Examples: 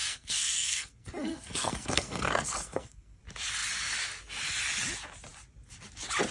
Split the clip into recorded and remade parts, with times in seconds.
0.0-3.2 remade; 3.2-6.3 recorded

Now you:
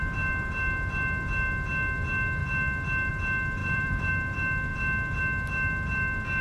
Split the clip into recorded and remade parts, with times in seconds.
0.0-3.6 recorded; 3.6-4.1 remade; 4.1-6.4 recorded